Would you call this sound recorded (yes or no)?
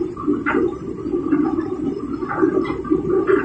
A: yes